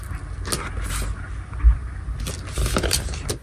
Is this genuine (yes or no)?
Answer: yes